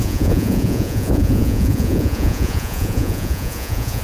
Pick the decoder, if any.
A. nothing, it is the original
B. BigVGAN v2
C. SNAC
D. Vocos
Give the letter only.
D